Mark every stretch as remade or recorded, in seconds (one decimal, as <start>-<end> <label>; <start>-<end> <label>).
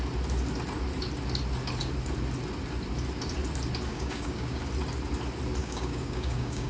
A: 0.0-3.9 recorded; 3.9-4.6 remade; 4.6-5.6 recorded; 5.6-6.7 remade